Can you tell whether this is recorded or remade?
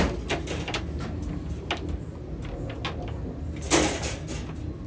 recorded